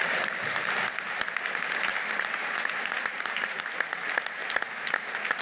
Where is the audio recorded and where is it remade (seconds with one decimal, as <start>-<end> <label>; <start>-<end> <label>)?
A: 0.0-0.7 remade; 0.7-1.9 recorded; 1.9-3.6 remade; 3.6-5.4 recorded